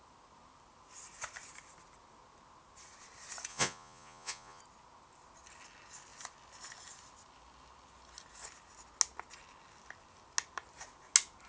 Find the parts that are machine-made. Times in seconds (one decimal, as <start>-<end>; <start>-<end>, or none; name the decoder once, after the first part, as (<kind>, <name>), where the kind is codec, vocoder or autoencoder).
3.5-4.6 (vocoder, Vocos)